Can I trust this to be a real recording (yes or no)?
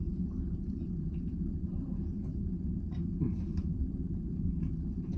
no